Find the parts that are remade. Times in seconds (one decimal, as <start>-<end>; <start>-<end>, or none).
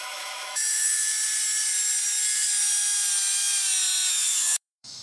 0.0-1.1; 4.1-5.0